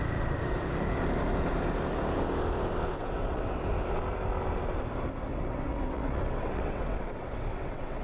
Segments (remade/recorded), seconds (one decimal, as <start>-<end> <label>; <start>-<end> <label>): 0.0-3.0 recorded; 3.0-3.6 remade; 3.6-5.3 recorded; 5.3-8.0 remade